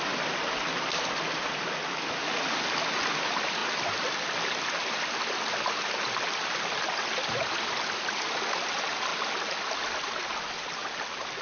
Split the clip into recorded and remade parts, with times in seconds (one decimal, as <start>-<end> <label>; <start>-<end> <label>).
0.0-11.4 recorded